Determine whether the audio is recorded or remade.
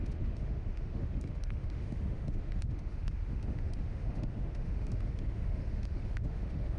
remade